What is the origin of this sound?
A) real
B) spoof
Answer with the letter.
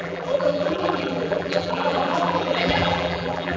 B